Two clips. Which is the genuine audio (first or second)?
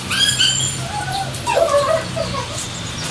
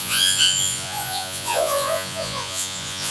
first